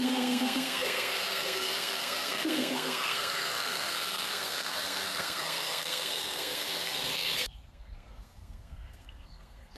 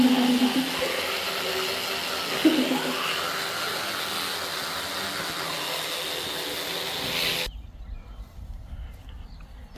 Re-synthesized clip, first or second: first